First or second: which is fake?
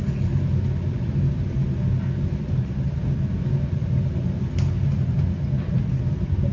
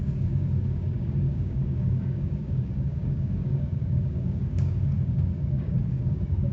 second